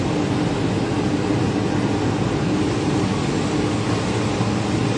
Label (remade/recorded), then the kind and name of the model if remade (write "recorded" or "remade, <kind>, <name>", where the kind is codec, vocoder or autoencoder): recorded